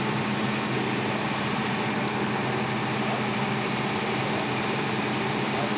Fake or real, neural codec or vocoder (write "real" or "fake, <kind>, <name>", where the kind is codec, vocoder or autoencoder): real